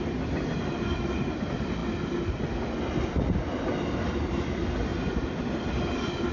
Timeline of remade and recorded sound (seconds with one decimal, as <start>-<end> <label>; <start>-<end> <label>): 0.0-6.3 recorded